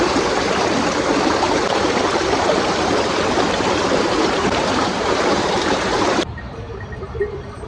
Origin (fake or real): fake